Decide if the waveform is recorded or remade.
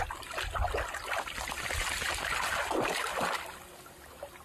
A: recorded